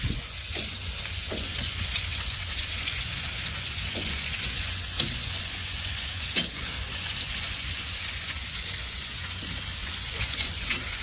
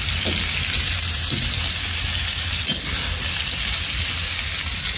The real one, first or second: second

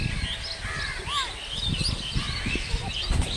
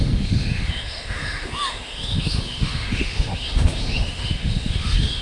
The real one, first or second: first